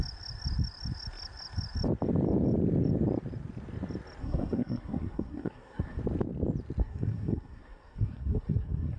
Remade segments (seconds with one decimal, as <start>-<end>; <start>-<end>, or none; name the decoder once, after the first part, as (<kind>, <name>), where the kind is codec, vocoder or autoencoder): 4.2-6.0 (codec, SNAC); 6.8-9.0